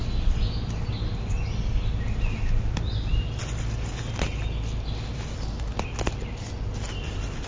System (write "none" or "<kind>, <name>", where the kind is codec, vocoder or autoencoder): none